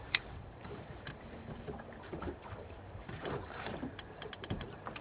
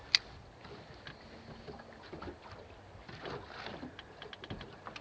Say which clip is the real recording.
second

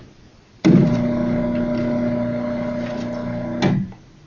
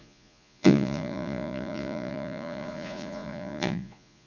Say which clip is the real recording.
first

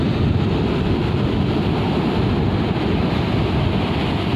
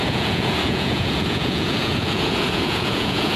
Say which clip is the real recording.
first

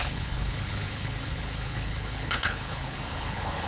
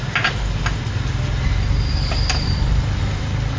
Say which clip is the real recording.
second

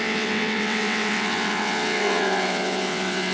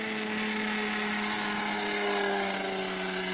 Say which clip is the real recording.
second